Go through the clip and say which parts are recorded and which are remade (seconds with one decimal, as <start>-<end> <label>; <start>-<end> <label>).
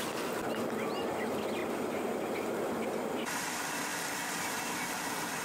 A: 0.0-5.4 recorded